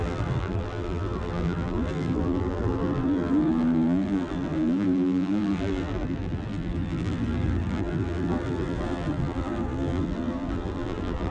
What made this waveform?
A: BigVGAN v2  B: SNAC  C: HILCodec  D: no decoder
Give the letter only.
A